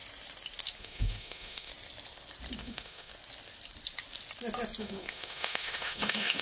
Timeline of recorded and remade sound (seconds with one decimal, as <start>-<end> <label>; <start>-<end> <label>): 0.0-0.8 recorded; 0.8-1.7 remade; 1.7-2.6 recorded; 2.6-3.1 remade; 3.1-4.8 recorded; 4.8-6.4 remade